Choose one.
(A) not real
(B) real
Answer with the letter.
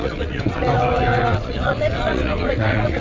A